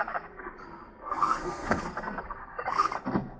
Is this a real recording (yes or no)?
no